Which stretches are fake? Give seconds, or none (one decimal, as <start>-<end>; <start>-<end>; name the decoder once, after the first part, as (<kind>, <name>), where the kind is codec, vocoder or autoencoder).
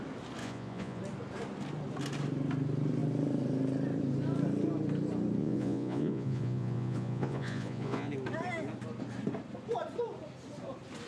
0.4-1.0 (vocoder, Vocos); 5.4-8.1